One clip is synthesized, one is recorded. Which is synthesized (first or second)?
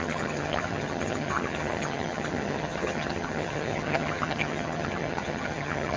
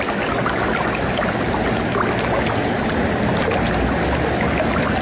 first